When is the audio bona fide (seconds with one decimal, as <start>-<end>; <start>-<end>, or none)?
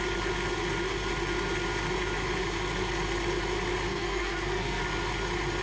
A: 0.0-3.9; 4.8-5.6